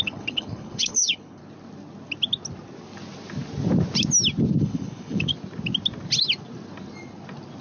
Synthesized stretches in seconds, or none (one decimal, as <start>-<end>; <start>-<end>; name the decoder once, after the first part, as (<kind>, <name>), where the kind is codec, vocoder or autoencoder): 0.0-1.4 (codec, HILCodec); 4.6-5.3